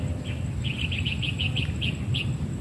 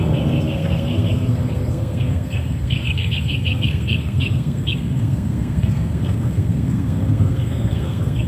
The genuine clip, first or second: first